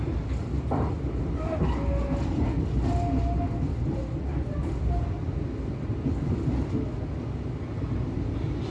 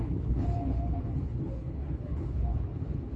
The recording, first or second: first